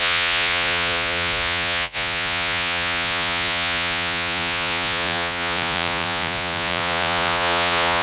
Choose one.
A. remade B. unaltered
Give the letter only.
A